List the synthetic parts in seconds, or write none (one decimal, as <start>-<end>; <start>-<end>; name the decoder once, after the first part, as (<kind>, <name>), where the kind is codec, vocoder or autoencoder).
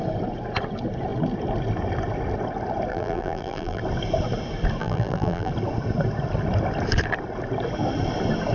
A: 2.9-3.8 (vocoder, BigVGAN v2); 4.8-5.5